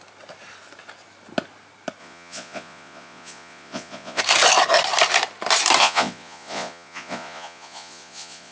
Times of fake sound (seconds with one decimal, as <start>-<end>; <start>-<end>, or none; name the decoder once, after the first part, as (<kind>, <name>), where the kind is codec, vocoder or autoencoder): 2.0-4.2 (vocoder, Vocos); 5.8-8.5